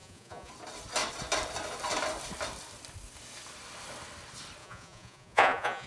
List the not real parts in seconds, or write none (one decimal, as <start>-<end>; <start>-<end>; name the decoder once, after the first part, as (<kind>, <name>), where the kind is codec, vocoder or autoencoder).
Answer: 0.0-0.5 (vocoder, Vocos); 4.6-5.9